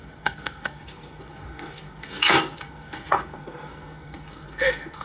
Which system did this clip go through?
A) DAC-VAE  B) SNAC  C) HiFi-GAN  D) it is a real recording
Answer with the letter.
B